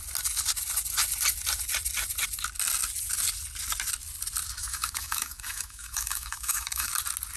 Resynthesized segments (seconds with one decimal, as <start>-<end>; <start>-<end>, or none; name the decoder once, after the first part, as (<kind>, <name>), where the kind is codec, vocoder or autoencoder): 4.6-6.9 (autoencoder, DAC-VAE)

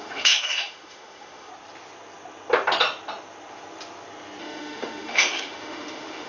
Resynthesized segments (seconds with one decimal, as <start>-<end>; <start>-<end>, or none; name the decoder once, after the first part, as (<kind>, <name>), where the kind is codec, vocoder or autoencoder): 0.0-1.5 (autoencoder, DAC-VAE); 4.4-6.3

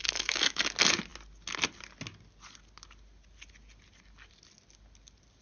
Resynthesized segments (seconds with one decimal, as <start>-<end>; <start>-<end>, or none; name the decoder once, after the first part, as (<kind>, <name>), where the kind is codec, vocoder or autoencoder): 0.0-0.6 (autoencoder, DAC-VAE)

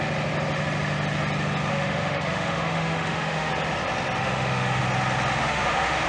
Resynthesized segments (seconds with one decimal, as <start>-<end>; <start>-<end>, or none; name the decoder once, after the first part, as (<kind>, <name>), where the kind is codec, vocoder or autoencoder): 1.7-3.5 (autoencoder, DAC-VAE); 4.2-4.8; 5.4-6.1

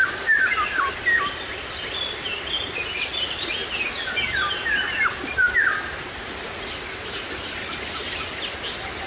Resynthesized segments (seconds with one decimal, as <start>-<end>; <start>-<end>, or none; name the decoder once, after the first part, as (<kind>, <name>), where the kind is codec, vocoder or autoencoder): none

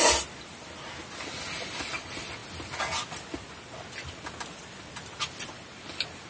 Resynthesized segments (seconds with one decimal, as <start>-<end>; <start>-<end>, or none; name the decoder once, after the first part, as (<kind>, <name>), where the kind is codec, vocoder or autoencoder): none

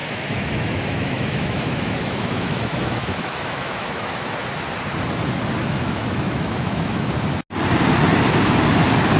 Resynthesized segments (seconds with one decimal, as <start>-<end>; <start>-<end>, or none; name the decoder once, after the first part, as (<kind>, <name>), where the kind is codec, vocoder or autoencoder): 0.0-4.3 (autoencoder, DAC-VAE); 5.6-7.1